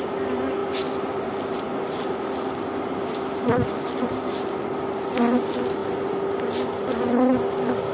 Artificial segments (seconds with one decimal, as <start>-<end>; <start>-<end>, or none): none